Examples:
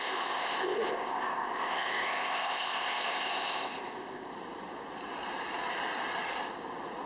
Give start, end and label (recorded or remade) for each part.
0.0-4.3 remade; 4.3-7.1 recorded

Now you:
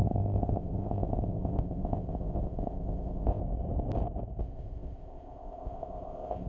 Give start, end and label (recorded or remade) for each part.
0.0-3.4 remade; 3.4-4.4 recorded; 4.4-6.5 remade

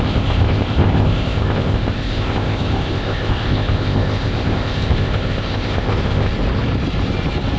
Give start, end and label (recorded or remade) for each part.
0.0-6.3 remade; 6.3-7.6 recorded